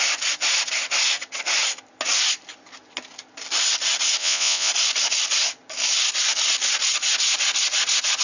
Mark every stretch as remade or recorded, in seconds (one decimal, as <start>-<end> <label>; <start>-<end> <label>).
0.0-4.2 recorded; 4.2-4.7 remade; 4.7-8.2 recorded